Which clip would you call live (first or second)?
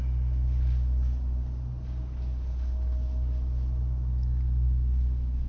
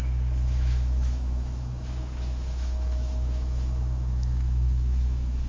first